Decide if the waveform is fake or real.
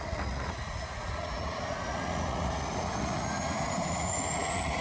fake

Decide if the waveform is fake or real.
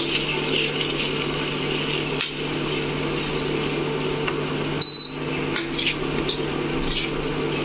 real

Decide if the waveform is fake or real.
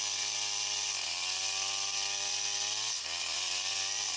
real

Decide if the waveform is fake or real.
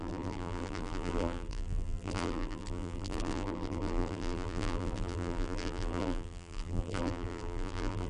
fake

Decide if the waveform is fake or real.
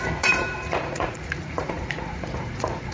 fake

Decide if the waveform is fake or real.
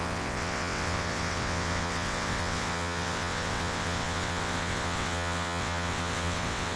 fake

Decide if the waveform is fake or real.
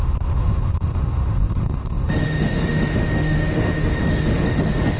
fake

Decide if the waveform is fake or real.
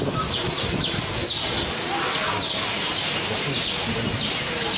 real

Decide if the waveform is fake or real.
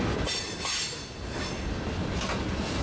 real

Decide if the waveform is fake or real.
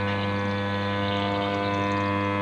real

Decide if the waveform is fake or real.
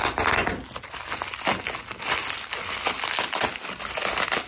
real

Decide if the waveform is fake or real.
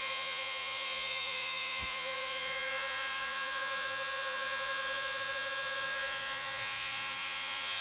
fake